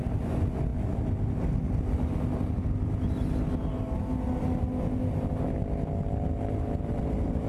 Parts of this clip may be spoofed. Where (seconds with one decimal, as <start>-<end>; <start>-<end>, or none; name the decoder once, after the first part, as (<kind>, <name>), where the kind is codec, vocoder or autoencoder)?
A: none